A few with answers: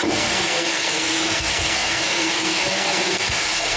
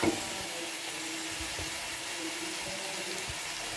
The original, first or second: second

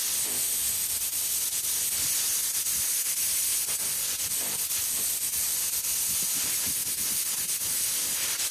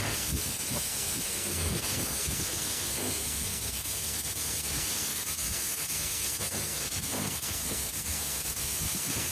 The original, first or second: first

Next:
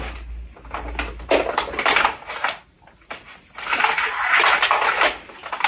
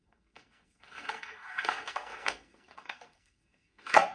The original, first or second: first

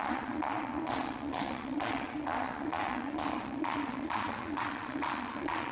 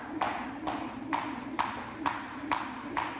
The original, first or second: second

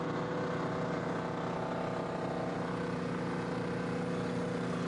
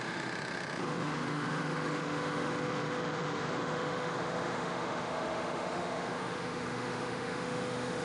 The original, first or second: first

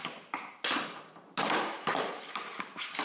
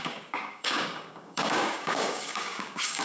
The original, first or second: first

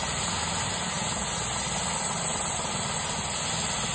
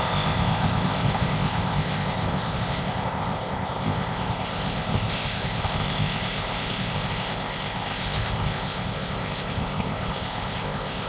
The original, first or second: first